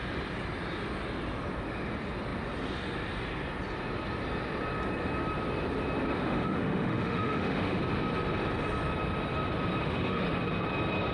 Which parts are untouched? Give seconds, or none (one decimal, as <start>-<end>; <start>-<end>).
0.0-6.1; 7.8-9.8; 10.4-11.1